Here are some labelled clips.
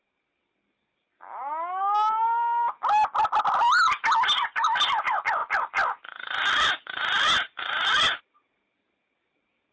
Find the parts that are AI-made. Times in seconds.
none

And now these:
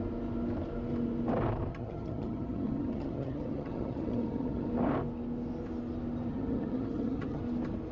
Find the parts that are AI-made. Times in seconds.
1.7-4.7 (vocoder, HiFi-GAN); 6.3-7.4

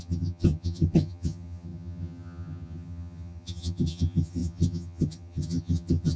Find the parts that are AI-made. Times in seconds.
0.0-6.2 (vocoder, HiFi-GAN)

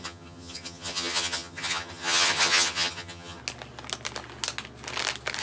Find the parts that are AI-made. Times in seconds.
0.0-3.4 (vocoder, HiFi-GAN)

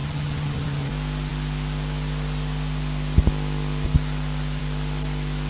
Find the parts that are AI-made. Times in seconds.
0.0-0.9 (vocoder, HiFi-GAN)

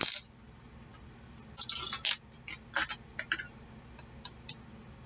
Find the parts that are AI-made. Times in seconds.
none